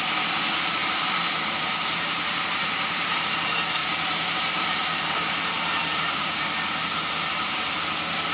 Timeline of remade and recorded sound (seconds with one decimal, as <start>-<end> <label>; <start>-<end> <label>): 0.0-0.8 recorded; 0.8-3.3 remade; 3.3-3.8 recorded; 3.8-7.8 remade; 7.8-8.3 recorded